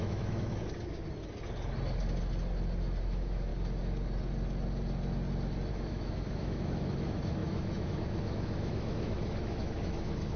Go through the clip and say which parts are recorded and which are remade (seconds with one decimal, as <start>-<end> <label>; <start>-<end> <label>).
0.0-0.6 remade; 0.6-3.0 recorded; 3.0-3.5 remade; 3.5-5.7 recorded; 5.7-10.4 remade